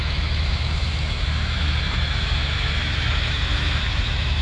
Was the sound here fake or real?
fake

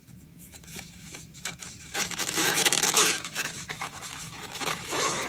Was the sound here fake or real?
fake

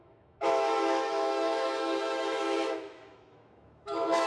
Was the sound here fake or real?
fake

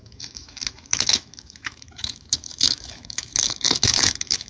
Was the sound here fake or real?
fake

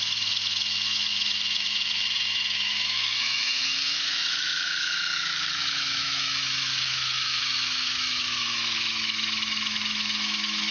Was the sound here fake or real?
fake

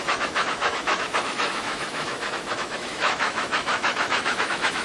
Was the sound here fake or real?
fake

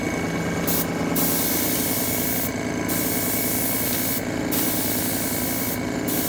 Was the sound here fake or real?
real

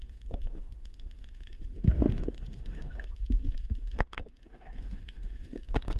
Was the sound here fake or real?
fake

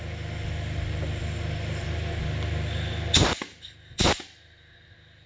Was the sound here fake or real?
real